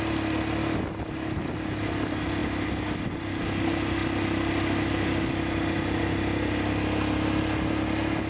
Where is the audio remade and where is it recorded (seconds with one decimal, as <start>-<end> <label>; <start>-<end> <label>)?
0.0-8.3 recorded